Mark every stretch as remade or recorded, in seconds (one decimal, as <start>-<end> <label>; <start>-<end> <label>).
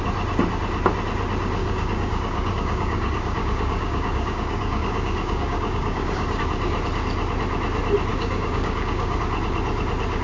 0.0-1.6 recorded; 1.6-6.4 remade; 6.4-8.1 recorded; 8.1-9.2 remade; 9.2-10.2 recorded